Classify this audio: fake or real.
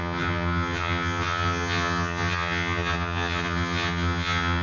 fake